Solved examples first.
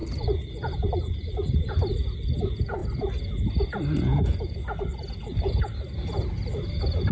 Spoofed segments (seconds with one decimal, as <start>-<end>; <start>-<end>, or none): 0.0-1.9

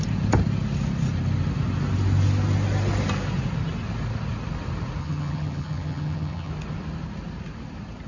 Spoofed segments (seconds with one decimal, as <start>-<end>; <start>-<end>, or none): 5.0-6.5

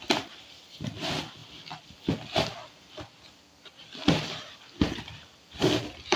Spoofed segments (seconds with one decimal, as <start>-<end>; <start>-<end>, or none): none

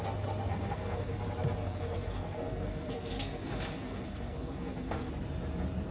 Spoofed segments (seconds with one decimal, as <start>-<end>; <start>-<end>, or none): 0.5-1.1; 1.6-5.1